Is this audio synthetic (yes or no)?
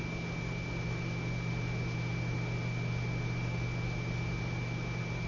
no